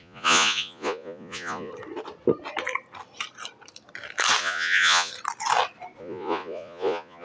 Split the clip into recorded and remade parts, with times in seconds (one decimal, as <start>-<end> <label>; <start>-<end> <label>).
0.0-1.7 remade; 1.7-4.4 recorded; 4.4-5.1 remade; 5.1-6.0 recorded; 6.0-7.2 remade

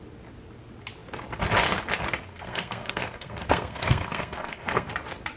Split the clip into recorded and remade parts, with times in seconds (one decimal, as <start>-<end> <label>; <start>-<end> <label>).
0.0-2.3 recorded; 2.3-4.9 remade; 4.9-5.4 recorded